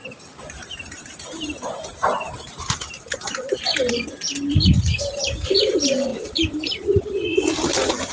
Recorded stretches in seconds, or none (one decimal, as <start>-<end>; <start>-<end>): 3.9-6.1; 7.0-8.1